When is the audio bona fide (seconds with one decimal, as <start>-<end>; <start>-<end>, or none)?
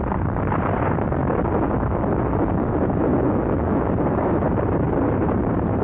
1.2-2.7; 3.1-3.9